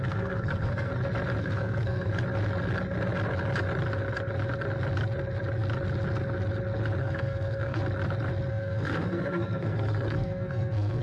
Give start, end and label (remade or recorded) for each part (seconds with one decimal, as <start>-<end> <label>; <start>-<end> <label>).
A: 0.0-0.9 remade; 0.9-1.4 recorded; 1.4-2.1 remade; 2.1-7.0 recorded; 7.0-7.8 remade; 7.8-8.5 recorded; 8.5-11.0 remade